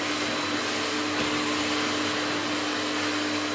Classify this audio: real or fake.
real